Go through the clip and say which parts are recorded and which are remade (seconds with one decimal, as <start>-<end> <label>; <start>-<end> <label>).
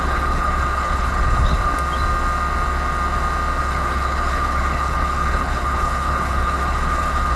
0.0-1.7 remade; 1.7-3.6 recorded; 3.6-7.4 remade